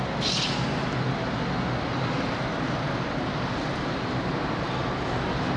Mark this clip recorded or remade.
recorded